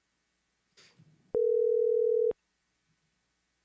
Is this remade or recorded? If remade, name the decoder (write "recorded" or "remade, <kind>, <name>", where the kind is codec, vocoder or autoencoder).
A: recorded